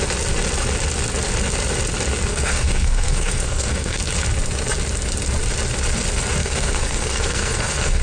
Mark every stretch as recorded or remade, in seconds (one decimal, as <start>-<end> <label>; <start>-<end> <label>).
0.0-2.3 recorded; 2.3-4.0 remade; 4.0-6.4 recorded; 6.4-8.0 remade